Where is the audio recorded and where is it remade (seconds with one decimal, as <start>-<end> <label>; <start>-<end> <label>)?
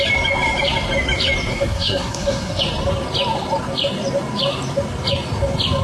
0.0-1.5 recorded; 1.5-2.6 remade; 2.6-5.8 recorded